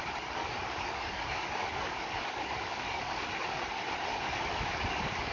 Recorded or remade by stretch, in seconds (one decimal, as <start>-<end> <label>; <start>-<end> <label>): 0.0-0.4 recorded; 0.4-3.6 remade; 3.6-4.1 recorded; 4.1-5.3 remade